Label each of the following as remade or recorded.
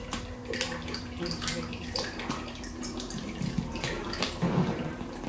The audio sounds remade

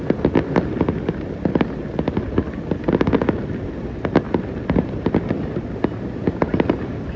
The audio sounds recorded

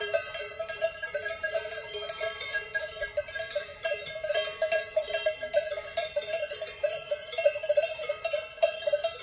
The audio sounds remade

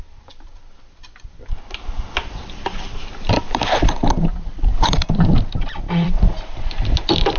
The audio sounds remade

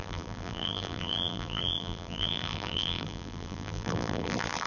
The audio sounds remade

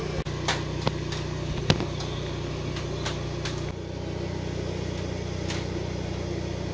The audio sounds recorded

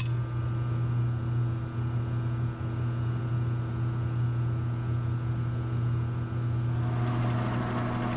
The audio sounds recorded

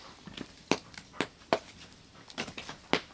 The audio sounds recorded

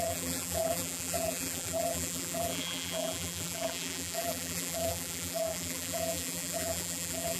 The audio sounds remade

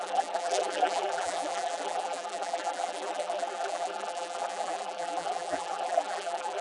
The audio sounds remade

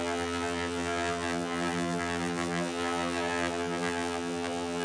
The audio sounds remade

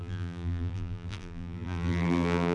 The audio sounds remade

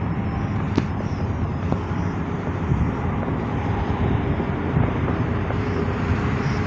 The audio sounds remade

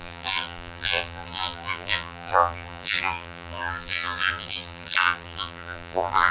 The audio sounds remade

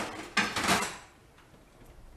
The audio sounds recorded